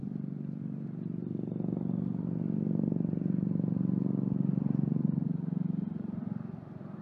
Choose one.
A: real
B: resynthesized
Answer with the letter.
B